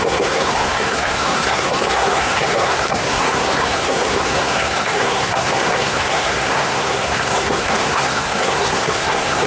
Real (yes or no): no